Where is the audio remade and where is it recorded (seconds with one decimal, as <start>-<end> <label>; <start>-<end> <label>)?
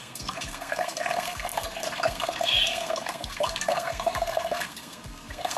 0.0-5.6 remade